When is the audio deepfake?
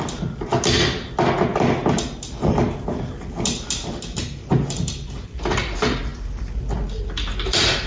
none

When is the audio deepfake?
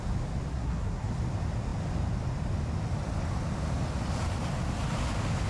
0.5-1.1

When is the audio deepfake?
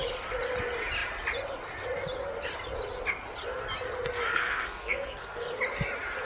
4.3-5.6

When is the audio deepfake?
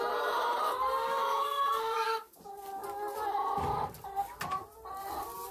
1.0-2.4